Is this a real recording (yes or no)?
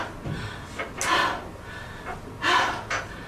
yes